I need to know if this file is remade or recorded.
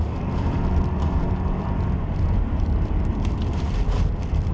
remade